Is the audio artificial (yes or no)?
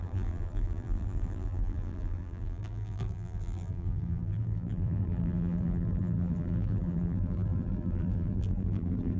yes